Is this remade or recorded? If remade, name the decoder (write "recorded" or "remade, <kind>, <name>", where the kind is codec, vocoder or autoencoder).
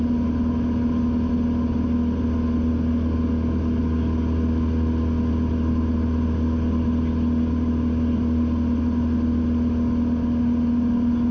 recorded